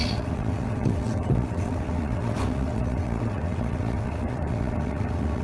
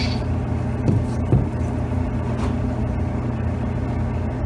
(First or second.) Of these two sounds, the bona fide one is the second